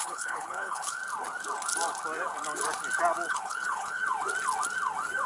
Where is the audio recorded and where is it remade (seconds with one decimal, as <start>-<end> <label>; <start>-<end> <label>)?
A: 0.0-1.0 remade; 1.0-3.3 recorded; 3.3-4.0 remade; 4.0-5.3 recorded